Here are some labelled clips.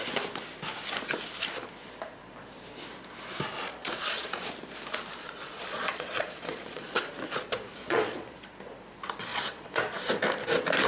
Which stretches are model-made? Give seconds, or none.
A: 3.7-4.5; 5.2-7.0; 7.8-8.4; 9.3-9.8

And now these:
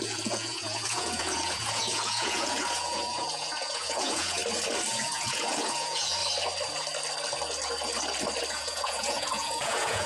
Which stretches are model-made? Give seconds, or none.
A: 0.0-4.4; 4.9-6.2; 8.5-10.1

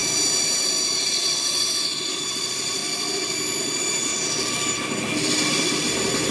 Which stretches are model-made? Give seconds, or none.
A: 1.0-2.8; 3.6-4.1

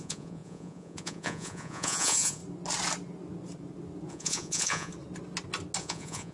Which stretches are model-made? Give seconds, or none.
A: 0.0-2.4; 4.1-4.9; 5.8-6.3